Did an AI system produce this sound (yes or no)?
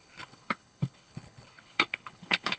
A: yes